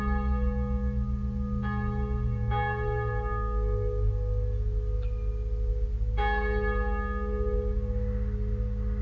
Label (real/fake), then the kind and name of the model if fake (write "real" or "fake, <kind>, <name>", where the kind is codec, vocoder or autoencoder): real